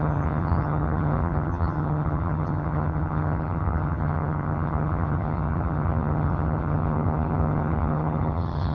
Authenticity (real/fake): fake